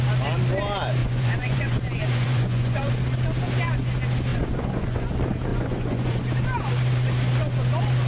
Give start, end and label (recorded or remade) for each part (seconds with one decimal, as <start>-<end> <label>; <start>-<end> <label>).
0.0-1.0 recorded; 1.0-2.9 remade; 2.9-4.3 recorded; 4.3-5.1 remade; 5.1-5.5 recorded; 5.5-6.2 remade; 6.2-8.1 recorded